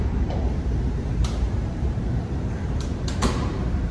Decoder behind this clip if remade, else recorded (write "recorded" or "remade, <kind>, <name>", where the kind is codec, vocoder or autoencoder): remade, vocoder, BigVGAN v2